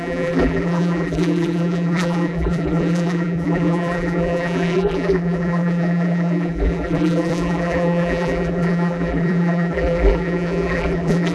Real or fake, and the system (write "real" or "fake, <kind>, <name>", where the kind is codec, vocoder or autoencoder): fake, vocoder, BigVGAN v2